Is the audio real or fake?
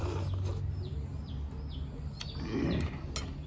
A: real